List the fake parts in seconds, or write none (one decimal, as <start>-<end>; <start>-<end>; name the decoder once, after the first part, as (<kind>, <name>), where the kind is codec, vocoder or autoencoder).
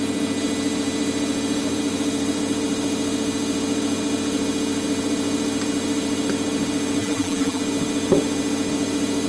7.0-7.6 (vocoder, BigVGAN v2)